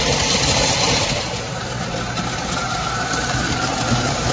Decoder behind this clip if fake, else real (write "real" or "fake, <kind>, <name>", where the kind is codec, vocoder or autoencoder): fake, vocoder, BigVGAN v2